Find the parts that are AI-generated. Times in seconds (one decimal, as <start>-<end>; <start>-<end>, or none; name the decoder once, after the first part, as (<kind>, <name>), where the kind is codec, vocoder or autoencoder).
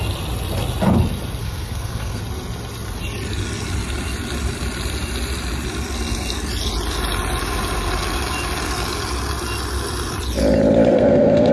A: 1.4-2.2 (codec, SNAC); 10.9-11.5